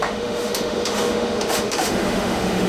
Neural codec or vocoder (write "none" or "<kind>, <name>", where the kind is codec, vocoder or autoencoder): autoencoder, DAC-VAE